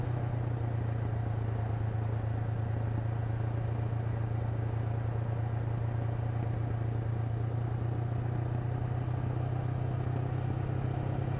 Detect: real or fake real